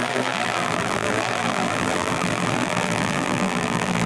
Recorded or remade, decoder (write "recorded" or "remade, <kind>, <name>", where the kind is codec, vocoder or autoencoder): remade, vocoder, BigVGAN v2